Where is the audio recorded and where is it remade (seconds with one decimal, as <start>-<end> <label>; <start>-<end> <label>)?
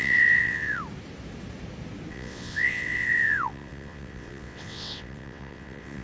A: 0.0-0.8 remade; 0.8-2.1 recorded; 2.1-6.0 remade